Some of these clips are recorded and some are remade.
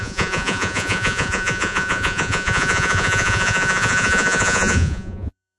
remade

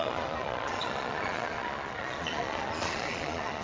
remade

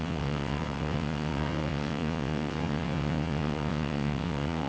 remade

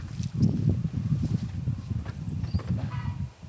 recorded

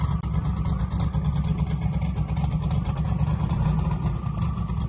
recorded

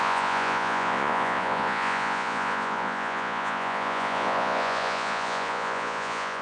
remade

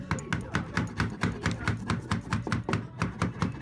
recorded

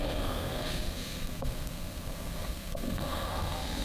remade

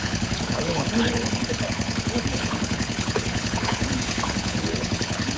remade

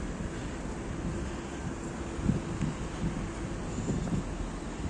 recorded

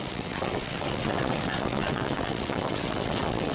remade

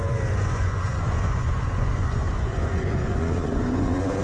remade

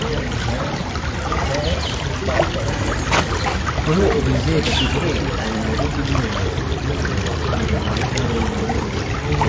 recorded